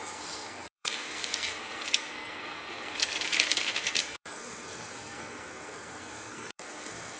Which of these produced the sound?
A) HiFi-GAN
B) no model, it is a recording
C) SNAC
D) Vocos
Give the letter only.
C